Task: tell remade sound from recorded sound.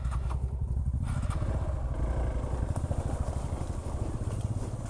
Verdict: recorded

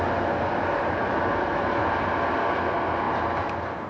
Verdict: recorded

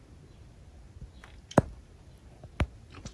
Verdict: recorded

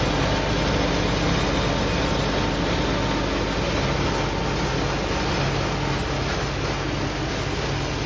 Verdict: recorded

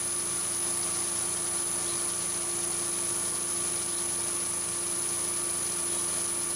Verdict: recorded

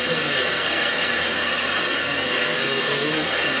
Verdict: remade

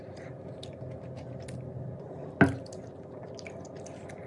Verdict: recorded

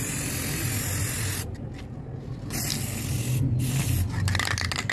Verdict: recorded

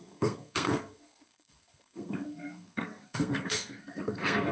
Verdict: remade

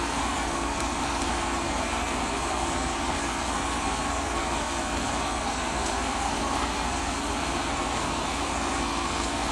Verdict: remade